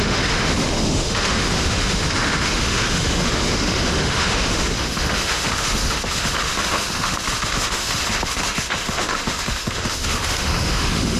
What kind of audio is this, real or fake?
fake